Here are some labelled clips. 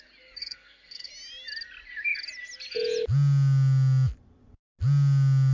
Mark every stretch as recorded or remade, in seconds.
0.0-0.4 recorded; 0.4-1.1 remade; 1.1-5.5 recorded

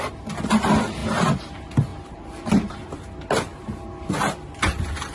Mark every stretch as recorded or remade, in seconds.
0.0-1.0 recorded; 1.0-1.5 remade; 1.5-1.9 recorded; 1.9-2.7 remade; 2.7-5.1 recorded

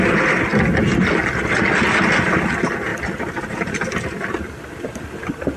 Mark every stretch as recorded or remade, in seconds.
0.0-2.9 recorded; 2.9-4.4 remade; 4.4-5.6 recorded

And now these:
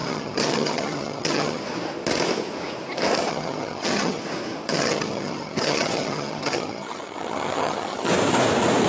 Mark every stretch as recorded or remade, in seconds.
0.0-1.6 remade; 1.6-3.3 recorded; 3.3-4.2 remade; 4.2-4.7 recorded; 4.7-8.1 remade; 8.1-8.9 recorded

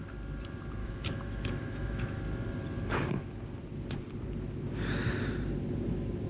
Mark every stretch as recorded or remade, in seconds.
0.0-0.8 recorded; 0.8-2.2 remade; 2.2-6.3 recorded

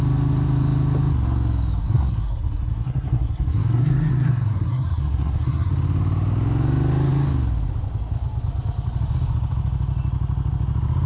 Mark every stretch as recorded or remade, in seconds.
0.0-1.8 recorded; 1.8-5.7 remade; 5.7-11.1 recorded